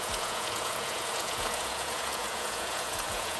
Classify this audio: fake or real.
fake